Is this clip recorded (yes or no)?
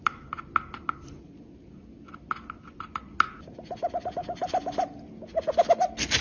yes